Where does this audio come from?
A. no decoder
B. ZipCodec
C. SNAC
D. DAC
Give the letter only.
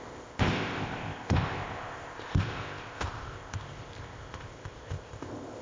B